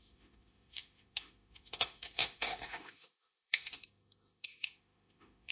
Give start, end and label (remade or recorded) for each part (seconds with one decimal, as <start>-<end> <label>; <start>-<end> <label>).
0.0-5.5 remade